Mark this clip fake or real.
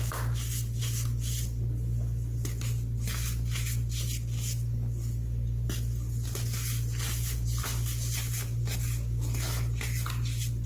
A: real